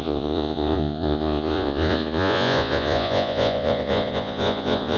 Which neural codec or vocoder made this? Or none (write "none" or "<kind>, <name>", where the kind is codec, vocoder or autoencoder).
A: vocoder, Vocos